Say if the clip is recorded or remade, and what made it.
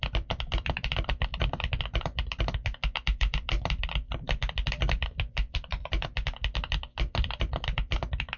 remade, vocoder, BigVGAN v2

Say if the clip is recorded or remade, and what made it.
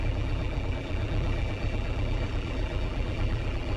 remade, vocoder, BigVGAN v2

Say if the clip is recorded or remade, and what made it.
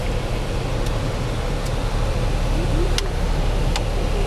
recorded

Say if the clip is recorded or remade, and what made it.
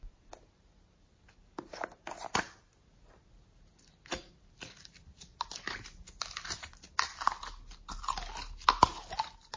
recorded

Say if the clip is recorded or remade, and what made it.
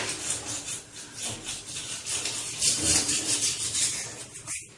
remade, vocoder, BigVGAN v2